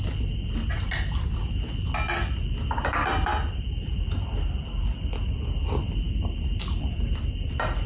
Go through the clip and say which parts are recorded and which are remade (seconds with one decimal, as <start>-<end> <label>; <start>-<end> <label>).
0.0-7.9 recorded